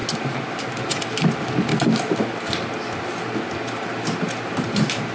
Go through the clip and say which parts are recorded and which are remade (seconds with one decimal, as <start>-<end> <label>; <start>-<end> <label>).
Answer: 0.0-5.1 recorded